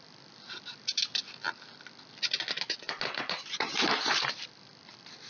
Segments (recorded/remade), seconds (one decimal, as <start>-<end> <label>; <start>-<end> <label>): 0.0-5.3 recorded